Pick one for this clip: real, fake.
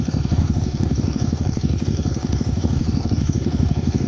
fake